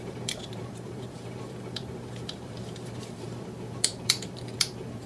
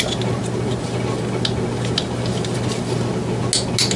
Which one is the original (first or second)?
second